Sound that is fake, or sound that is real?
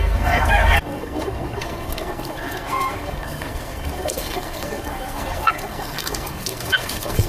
fake